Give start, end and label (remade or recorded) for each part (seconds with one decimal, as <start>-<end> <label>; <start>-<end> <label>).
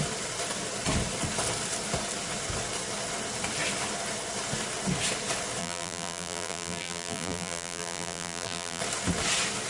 0.0-5.6 recorded; 5.6-8.8 remade; 8.8-9.7 recorded